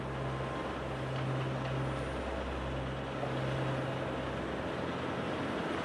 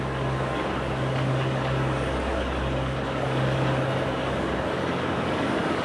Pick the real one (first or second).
first